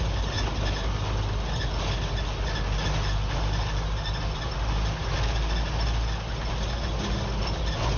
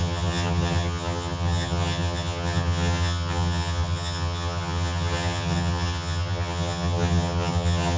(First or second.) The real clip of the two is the first